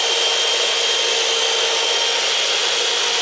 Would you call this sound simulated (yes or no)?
no